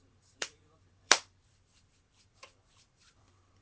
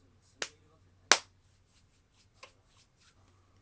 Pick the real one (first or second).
second